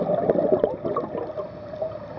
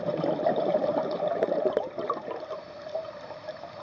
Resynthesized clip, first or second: second